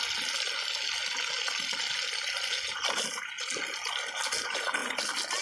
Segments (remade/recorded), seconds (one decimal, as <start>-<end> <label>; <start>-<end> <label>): 0.0-5.4 recorded